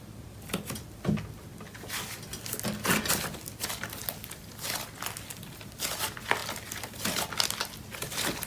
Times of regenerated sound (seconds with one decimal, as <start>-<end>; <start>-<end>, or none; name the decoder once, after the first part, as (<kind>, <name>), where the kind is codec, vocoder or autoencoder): none